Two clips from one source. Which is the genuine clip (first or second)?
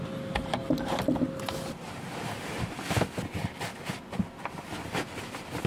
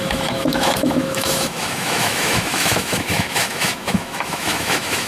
first